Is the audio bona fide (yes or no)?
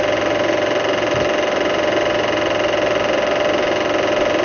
yes